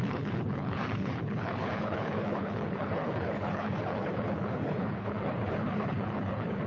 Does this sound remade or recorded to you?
remade